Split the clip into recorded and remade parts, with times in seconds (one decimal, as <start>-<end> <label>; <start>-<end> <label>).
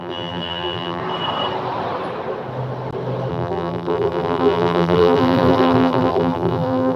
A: 0.0-1.0 remade; 1.0-3.3 recorded; 3.3-7.0 remade